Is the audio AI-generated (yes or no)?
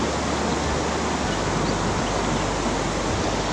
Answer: no